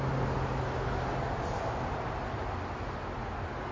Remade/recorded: recorded